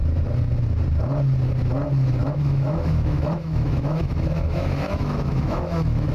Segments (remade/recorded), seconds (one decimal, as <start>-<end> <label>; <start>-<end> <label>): 0.0-2.2 recorded; 2.2-6.1 remade